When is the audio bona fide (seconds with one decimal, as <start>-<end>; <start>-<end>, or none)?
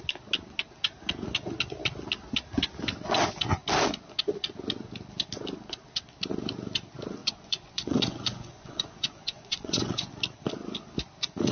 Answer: 0.0-7.2; 10.1-11.5